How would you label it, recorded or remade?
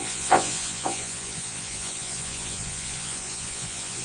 remade